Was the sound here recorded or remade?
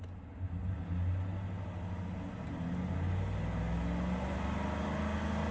recorded